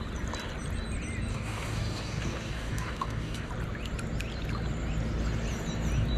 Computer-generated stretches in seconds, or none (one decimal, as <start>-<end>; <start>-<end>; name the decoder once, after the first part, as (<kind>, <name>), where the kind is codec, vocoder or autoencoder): 1.3-3.5 (codec, DAC)